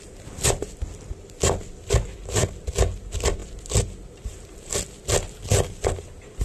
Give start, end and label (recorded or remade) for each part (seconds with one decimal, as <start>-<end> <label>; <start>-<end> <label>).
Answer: 0.0-6.4 recorded